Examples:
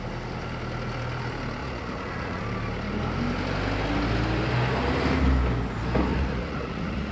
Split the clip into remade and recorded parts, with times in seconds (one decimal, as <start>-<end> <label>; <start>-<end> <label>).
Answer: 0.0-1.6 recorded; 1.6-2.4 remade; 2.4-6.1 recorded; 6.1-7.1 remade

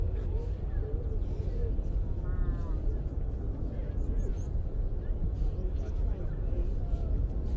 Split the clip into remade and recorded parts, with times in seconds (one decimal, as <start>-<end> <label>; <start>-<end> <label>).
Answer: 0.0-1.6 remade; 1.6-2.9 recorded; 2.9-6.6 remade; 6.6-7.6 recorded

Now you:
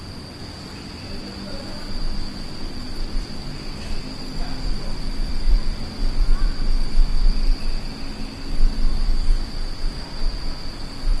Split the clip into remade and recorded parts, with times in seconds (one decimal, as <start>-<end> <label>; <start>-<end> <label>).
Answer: 0.0-11.2 recorded

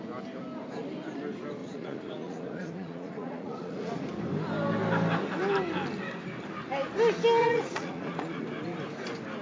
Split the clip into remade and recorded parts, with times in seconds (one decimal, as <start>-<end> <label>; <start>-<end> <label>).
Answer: 0.0-1.6 recorded; 1.6-3.9 remade; 3.9-7.4 recorded; 7.4-8.4 remade; 8.4-9.4 recorded

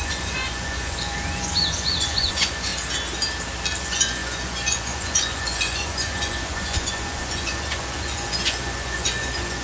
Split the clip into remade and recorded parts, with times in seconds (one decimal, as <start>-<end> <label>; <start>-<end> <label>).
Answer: 0.0-2.7 remade; 2.7-3.8 recorded; 3.8-9.6 remade

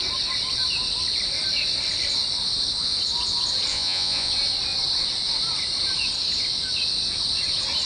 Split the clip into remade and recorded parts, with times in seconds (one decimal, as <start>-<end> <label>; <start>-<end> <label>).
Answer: 0.0-3.7 recorded; 3.7-4.3 remade; 4.3-7.9 recorded